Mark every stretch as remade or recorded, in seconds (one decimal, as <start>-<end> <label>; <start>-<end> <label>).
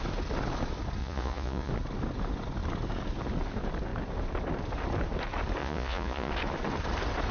0.0-1.0 recorded; 1.0-1.7 remade; 1.7-5.6 recorded; 5.6-6.3 remade; 6.3-7.3 recorded